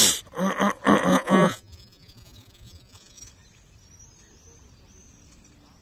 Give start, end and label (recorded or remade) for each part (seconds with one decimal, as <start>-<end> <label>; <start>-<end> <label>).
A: 0.0-1.1 recorded; 1.1-3.3 remade; 3.3-5.8 recorded